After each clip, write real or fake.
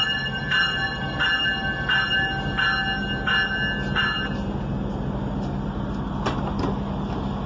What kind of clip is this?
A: real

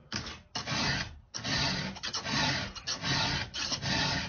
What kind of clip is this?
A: real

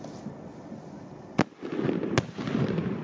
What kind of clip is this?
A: real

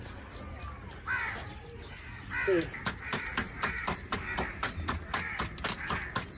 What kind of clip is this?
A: real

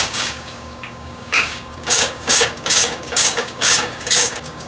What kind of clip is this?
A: fake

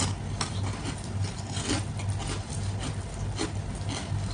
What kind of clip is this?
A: real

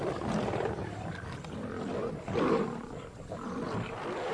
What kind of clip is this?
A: fake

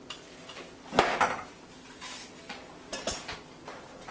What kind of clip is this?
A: real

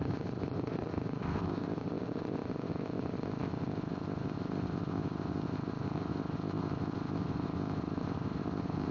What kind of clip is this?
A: fake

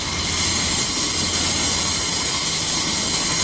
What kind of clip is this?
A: real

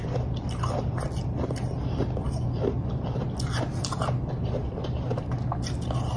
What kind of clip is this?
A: real